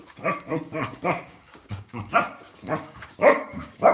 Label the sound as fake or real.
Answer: fake